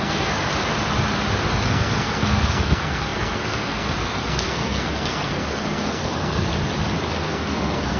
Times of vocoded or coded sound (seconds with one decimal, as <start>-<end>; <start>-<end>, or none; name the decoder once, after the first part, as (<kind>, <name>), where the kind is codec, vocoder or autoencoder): 0.0-0.5 (codec, SNAC); 1.5-6.5; 7.1-8.0